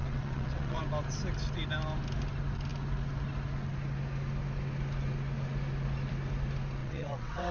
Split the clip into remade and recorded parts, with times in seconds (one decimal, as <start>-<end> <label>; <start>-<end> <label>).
0.0-0.8 remade; 0.8-6.8 recorded; 6.8-7.5 remade